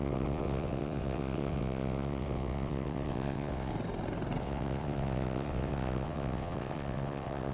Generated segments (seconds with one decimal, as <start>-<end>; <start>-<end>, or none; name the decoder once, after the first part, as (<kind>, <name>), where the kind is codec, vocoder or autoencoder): 0.0-3.7 (vocoder, WaveNeXt); 4.4-7.5